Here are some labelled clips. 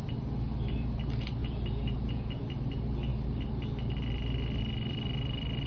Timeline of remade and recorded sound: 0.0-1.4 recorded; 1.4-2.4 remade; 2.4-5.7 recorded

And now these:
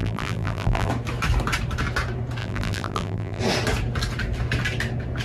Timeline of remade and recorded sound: 0.0-0.9 remade; 0.9-2.4 recorded; 2.4-3.4 remade; 3.4-5.2 recorded

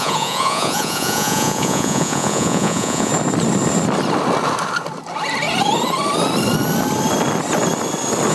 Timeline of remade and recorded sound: 0.0-3.1 remade; 3.1-8.3 recorded

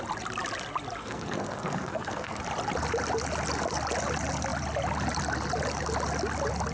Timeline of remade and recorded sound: 0.0-1.0 recorded; 1.0-2.4 remade; 2.4-6.7 recorded

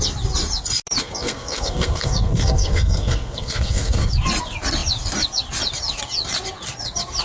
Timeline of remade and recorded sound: 0.0-1.0 recorded; 1.0-4.1 remade; 4.1-7.2 recorded

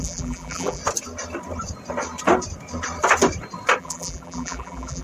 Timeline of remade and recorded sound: 0.0-0.8 remade; 0.8-3.8 recorded; 3.8-5.0 remade

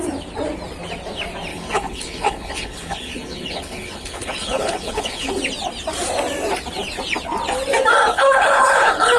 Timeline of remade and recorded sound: 0.0-1.5 recorded; 1.5-5.3 remade; 5.3-8.1 recorded; 8.1-9.2 remade